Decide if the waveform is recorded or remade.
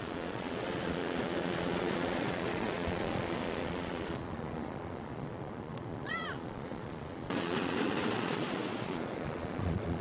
remade